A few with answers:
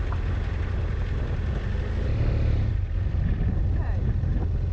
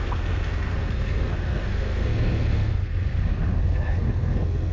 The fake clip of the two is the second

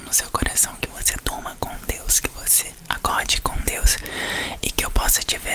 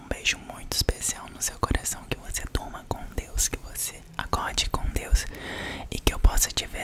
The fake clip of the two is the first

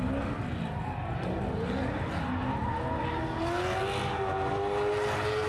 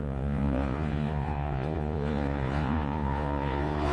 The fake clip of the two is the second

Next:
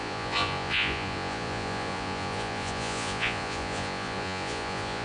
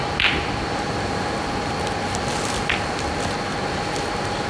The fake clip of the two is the first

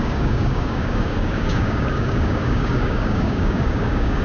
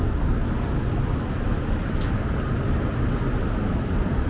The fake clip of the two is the first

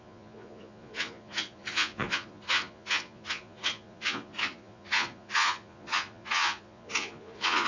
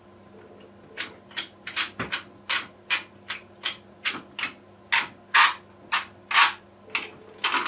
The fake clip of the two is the first